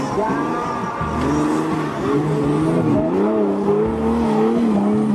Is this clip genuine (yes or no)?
yes